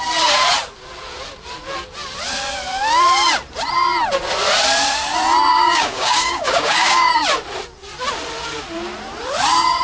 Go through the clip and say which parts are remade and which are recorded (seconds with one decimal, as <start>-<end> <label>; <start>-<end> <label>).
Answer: 0.0-5.5 recorded; 5.5-7.1 remade; 7.1-9.8 recorded